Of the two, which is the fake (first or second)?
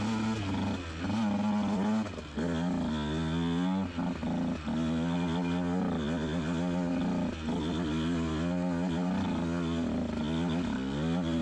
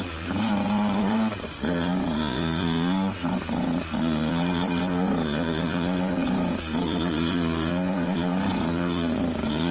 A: second